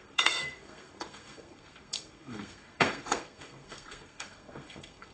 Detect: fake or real fake